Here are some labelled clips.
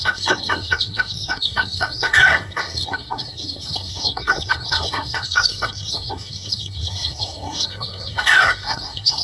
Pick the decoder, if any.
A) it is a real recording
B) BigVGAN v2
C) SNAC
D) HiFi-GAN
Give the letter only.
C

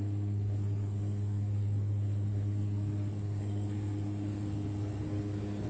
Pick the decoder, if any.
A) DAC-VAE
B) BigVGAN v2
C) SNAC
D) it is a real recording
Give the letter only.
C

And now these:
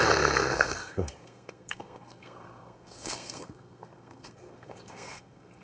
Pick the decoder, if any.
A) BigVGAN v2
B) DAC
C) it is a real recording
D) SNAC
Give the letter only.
D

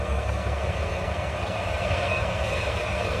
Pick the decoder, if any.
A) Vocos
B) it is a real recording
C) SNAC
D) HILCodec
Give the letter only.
C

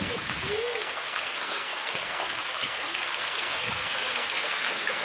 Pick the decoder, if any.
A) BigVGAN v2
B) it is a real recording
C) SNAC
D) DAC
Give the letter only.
C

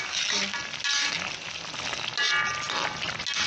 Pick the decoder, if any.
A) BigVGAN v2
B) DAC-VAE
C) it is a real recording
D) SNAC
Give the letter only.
C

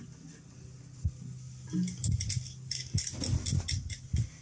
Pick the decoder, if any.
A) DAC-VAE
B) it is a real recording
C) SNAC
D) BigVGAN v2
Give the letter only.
B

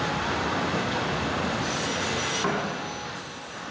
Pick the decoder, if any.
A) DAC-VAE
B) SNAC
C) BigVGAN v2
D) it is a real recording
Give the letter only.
D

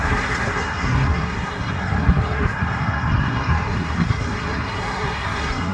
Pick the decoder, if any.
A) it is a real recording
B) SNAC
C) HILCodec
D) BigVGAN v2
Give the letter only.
B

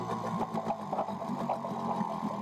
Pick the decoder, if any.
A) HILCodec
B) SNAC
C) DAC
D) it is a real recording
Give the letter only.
D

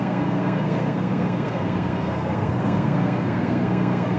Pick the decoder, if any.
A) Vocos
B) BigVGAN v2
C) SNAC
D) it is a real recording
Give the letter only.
C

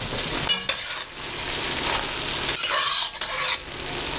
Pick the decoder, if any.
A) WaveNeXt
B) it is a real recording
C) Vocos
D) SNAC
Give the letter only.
B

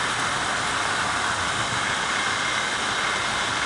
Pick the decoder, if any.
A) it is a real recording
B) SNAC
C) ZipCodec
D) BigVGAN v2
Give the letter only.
A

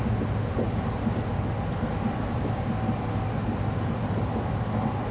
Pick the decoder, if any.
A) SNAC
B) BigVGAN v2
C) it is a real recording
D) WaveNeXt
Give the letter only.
C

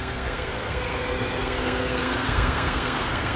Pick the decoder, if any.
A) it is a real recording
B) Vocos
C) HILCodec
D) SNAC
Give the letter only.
D